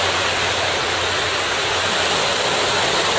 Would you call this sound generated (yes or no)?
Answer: no